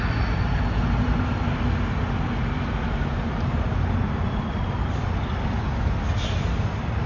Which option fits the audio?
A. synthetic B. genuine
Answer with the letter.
B